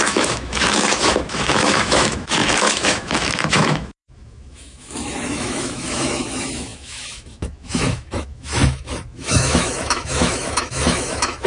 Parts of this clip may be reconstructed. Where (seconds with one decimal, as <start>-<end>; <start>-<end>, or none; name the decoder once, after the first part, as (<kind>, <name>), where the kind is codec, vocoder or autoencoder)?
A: 0.0-11.5 (autoencoder, DAC-VAE)